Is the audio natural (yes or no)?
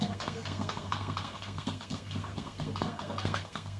no